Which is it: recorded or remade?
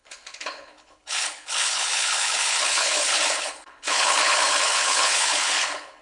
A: remade